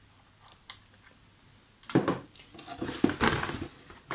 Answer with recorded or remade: recorded